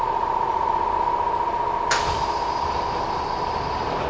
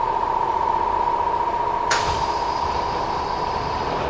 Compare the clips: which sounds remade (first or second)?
second